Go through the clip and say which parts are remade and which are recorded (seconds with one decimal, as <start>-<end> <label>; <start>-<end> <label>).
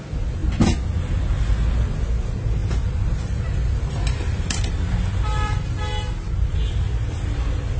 0.0-2.6 recorded; 2.6-5.8 remade; 5.8-7.8 recorded